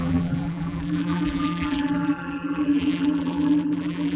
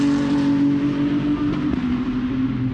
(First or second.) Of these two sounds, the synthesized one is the first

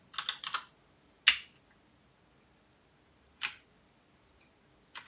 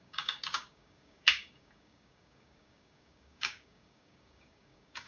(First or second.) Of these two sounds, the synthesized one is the second